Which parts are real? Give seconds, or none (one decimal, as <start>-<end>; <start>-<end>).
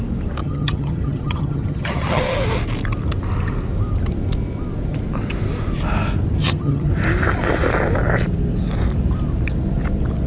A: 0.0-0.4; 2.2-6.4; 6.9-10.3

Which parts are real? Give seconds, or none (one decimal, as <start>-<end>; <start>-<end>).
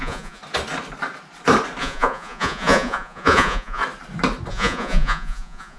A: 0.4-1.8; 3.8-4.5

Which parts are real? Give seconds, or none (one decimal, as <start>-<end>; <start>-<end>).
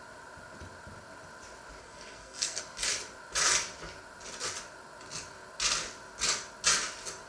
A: 0.0-1.8; 2.6-7.3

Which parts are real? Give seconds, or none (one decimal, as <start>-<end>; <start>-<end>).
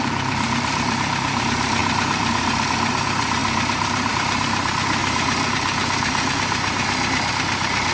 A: 5.0-7.3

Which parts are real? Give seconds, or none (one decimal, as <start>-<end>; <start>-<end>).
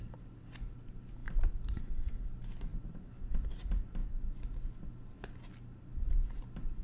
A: 0.0-6.8